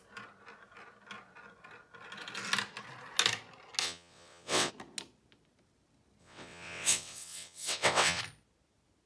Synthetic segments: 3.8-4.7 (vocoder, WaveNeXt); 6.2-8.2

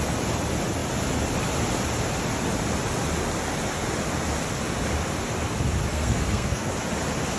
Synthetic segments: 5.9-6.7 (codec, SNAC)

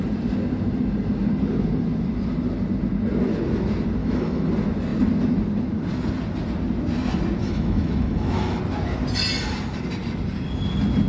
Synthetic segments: 4.0-4.5 (autoencoder, DAC-VAE); 7.4-8.6

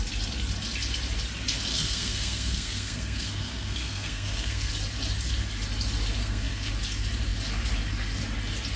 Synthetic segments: 1.7-4.7 (codec, SNAC); 6.2-6.7